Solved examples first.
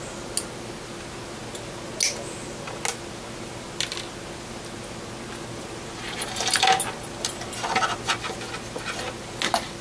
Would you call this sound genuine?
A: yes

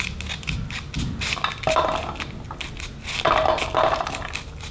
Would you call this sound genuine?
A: yes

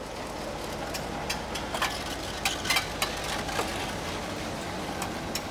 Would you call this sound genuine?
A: yes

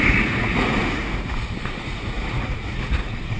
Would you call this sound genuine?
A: no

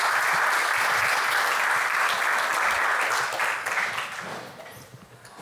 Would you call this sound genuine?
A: yes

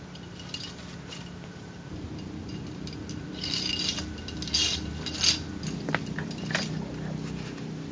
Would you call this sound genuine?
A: yes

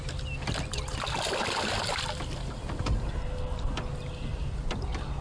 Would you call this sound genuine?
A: yes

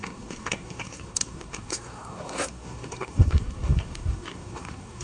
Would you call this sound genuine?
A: no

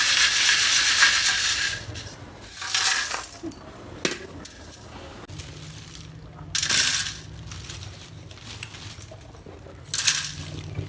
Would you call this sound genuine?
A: yes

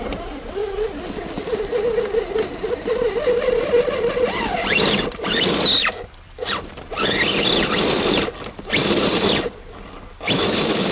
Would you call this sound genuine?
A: yes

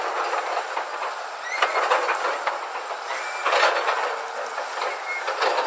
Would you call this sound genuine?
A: yes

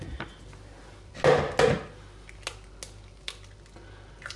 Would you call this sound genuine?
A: yes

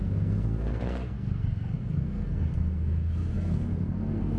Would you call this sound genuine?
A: no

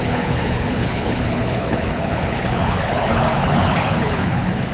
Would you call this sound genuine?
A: no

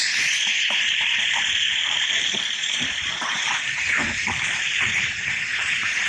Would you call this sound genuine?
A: no